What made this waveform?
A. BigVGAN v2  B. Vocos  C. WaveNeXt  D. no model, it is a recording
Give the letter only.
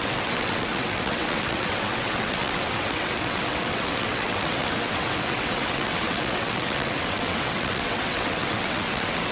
C